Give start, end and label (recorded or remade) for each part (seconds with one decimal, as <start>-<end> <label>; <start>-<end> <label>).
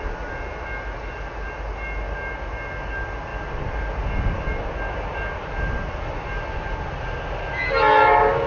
0.0-8.5 recorded